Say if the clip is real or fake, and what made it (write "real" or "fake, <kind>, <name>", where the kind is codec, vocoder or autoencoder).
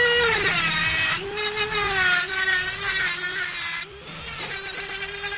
real